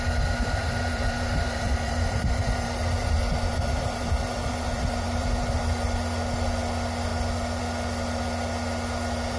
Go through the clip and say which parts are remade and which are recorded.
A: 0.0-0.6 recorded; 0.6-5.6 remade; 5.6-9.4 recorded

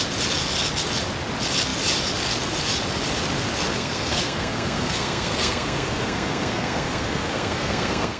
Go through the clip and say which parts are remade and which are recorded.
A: 0.0-3.7 recorded; 3.7-8.2 remade

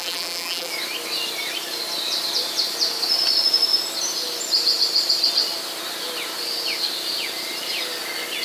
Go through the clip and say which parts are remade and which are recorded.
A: 0.0-0.7 remade; 0.7-8.4 recorded

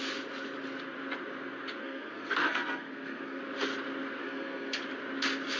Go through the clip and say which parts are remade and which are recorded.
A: 0.0-1.8 recorded; 1.8-3.4 remade; 3.4-4.2 recorded; 4.2-4.8 remade; 4.8-5.6 recorded